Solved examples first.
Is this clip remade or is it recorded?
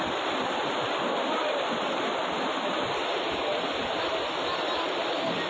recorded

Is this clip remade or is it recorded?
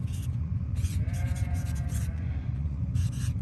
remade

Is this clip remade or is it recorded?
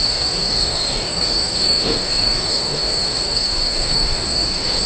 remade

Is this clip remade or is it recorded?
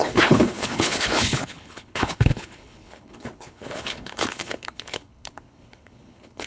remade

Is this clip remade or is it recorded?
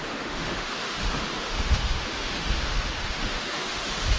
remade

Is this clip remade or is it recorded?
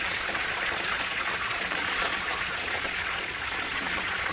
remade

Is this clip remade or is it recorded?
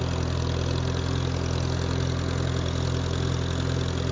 recorded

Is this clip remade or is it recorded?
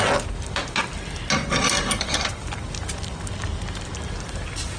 recorded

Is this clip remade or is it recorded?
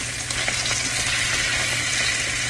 recorded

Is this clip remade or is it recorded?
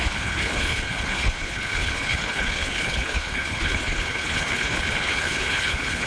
remade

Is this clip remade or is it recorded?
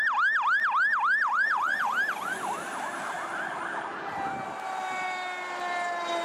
recorded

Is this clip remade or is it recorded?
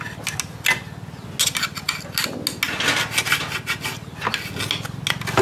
recorded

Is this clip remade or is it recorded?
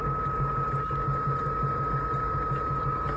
recorded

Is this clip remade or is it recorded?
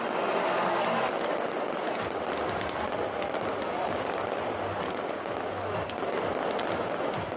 recorded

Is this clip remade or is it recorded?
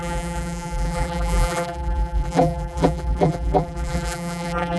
remade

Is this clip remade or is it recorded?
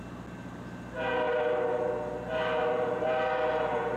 recorded